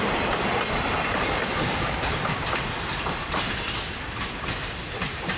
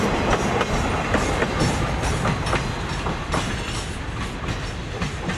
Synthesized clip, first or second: first